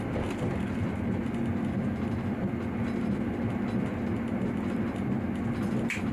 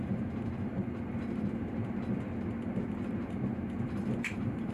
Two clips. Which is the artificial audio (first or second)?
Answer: second